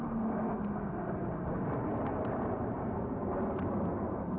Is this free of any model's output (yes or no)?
yes